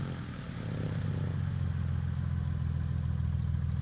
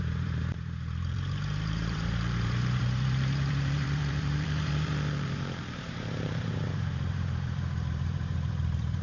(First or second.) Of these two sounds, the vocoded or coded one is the second